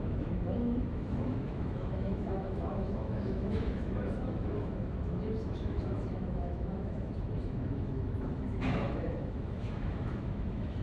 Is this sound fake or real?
fake